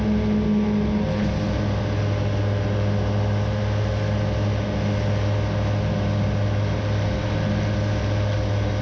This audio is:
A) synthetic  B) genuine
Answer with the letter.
B